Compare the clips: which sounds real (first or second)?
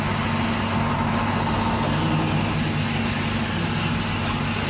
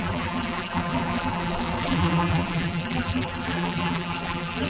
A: first